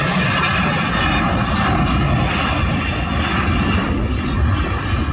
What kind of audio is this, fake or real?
real